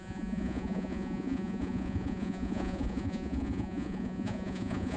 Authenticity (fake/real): fake